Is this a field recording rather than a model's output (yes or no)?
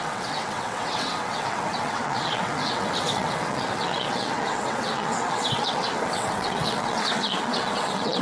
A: no